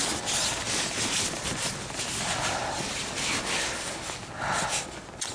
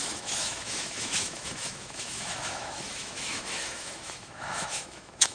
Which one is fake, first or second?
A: second